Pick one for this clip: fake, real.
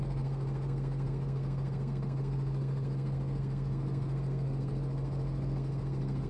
fake